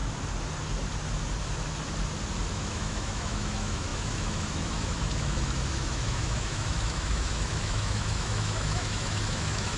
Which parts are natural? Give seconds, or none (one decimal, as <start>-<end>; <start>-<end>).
0.0-2.5

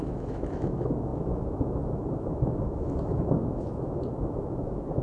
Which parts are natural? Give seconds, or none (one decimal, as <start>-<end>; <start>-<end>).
none

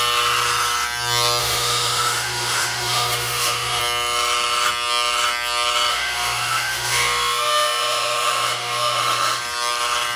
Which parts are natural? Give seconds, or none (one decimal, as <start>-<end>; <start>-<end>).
0.0-1.4; 3.8-5.9; 9.4-10.2